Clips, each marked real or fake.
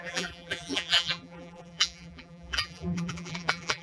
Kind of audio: fake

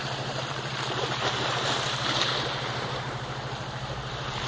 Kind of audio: fake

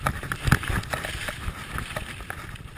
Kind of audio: fake